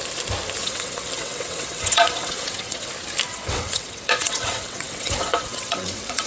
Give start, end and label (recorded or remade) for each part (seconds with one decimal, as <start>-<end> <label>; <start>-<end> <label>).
0.0-0.6 recorded; 0.6-2.9 remade; 2.9-3.3 recorded; 3.3-6.3 remade